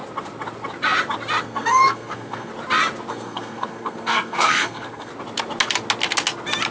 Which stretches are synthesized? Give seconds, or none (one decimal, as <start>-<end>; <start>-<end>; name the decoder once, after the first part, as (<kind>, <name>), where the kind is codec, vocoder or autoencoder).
1.4-2.5 (codec, SNAC); 3.1-5.1